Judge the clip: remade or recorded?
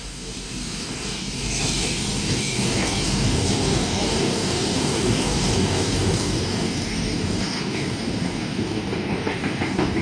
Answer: remade